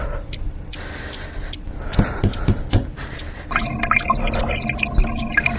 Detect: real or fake real